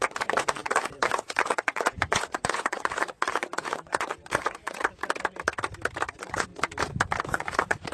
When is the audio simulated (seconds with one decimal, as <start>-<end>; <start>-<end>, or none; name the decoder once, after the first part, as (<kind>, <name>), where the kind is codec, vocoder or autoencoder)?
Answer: 0.0-4.8 (vocoder, Vocos); 6.1-6.5; 7.2-7.9